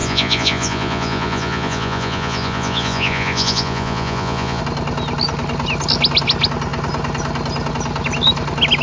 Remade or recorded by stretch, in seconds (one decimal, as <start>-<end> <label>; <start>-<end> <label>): 0.0-4.6 remade; 4.6-8.8 recorded